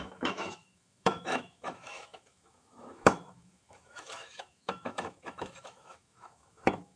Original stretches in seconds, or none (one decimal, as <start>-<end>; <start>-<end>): none